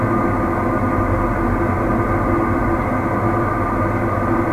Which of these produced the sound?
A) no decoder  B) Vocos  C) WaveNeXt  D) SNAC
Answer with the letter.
A